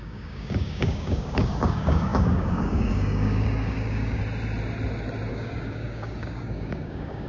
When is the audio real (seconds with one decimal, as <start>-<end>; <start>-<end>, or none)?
4.2-5.3